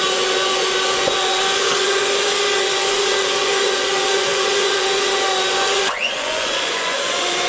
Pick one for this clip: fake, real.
fake